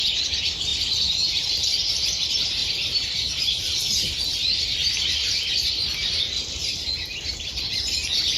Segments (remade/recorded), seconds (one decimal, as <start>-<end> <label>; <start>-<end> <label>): 0.0-8.4 recorded